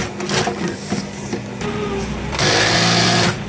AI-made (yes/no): no